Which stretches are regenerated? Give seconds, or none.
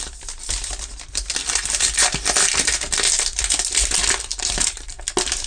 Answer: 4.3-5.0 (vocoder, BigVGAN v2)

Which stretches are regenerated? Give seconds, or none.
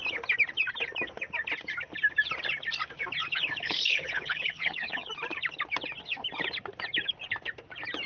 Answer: 3.2-5.1 (codec, HILCodec)